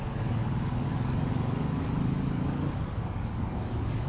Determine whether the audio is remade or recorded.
remade